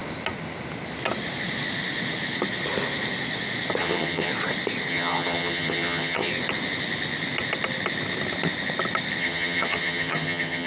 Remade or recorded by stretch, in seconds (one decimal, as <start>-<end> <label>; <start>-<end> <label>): 0.0-3.8 recorded; 3.8-4.3 remade; 4.3-4.9 recorded; 4.9-6.3 remade; 6.3-9.2 recorded; 9.2-10.7 remade